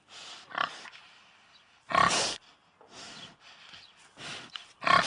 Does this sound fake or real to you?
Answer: real